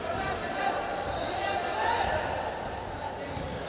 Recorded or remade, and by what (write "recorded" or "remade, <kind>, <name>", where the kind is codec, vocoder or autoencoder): recorded